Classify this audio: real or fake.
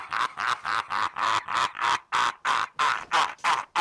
real